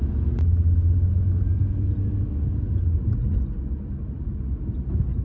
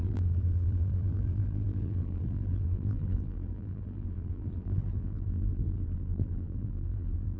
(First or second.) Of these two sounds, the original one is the first